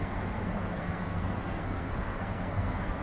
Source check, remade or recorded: remade